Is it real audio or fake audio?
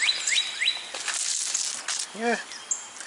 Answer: real